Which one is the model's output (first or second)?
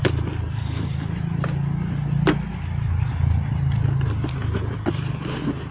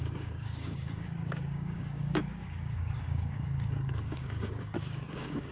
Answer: second